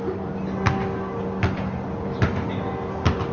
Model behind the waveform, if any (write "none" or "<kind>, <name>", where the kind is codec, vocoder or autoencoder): none